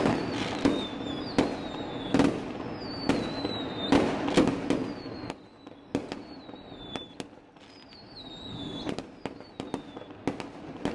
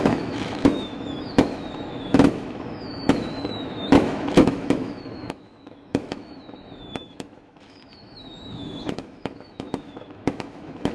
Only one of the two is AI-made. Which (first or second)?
second